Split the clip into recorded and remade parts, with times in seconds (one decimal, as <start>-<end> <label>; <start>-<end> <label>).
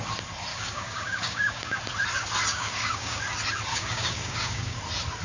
0.0-0.5 recorded; 0.5-1.8 remade; 1.8-2.5 recorded; 2.5-3.2 remade; 3.2-3.7 recorded; 3.7-4.8 remade; 4.8-5.2 recorded